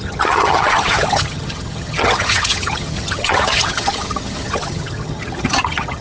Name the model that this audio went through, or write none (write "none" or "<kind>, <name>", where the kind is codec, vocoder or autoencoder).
vocoder, HiFi-GAN